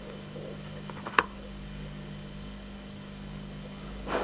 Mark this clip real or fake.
fake